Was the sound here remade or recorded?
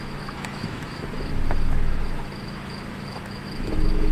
remade